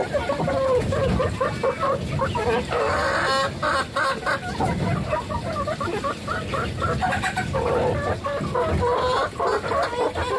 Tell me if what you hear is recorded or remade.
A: recorded